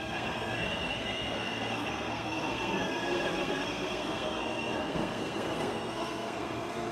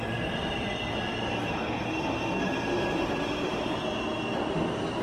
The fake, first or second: first